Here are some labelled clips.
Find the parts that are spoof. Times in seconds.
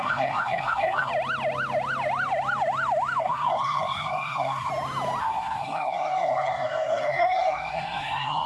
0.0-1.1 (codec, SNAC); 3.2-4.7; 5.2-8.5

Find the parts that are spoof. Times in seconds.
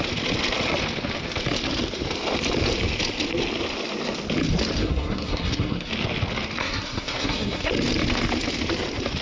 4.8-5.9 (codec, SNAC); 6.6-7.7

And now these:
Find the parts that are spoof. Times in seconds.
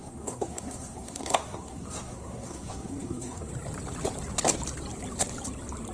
0.0-3.5 (codec, SNAC)